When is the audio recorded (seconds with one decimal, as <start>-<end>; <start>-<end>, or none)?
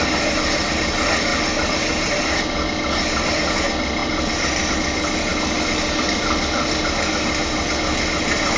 0.0-8.6